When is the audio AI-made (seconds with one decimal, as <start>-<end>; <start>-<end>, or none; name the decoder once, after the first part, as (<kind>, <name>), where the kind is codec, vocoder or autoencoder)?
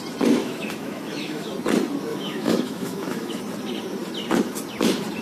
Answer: 0.4-1.5 (autoencoder, DAC-VAE); 2.1-3.4